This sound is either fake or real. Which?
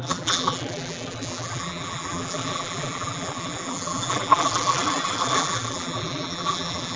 fake